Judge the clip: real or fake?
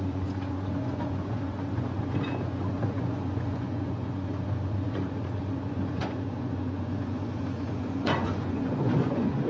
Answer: fake